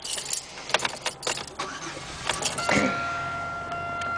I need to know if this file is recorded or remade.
recorded